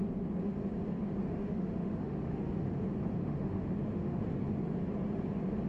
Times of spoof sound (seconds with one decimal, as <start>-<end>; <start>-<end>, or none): 1.2-2.8; 3.2-4.2